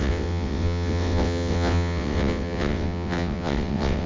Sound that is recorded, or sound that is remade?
remade